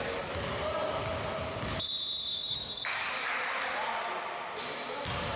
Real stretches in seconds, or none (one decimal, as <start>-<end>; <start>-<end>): 0.0-2.3; 3.5-5.4